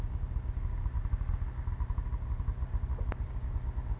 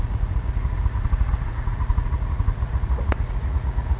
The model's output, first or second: second